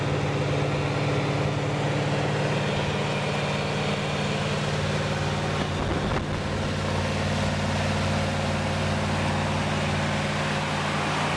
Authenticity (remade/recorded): recorded